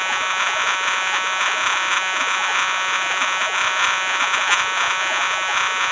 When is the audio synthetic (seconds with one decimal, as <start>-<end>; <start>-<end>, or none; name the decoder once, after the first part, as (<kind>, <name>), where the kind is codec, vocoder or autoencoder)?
0.0-5.9 (vocoder, Vocos)